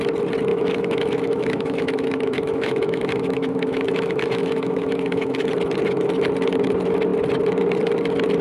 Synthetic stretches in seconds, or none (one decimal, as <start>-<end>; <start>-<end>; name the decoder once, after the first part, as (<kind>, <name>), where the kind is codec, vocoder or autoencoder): 0.5-5.5 (autoencoder, DAC-VAE)